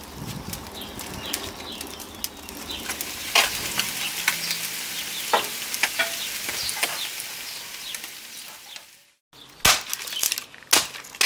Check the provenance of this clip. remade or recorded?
recorded